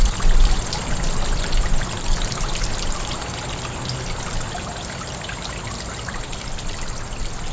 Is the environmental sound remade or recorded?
recorded